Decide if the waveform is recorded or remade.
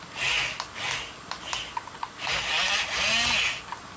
recorded